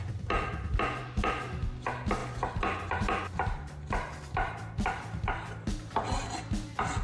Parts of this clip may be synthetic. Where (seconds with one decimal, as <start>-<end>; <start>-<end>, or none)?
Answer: none